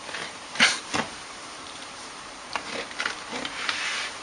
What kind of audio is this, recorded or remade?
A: remade